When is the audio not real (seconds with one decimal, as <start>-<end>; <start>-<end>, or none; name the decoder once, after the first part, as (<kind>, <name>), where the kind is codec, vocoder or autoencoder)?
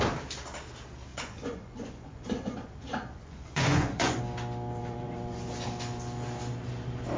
1.1-4.2 (vocoder, Vocos); 4.8-5.5